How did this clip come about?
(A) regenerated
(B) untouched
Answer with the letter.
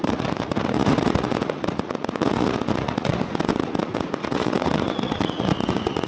A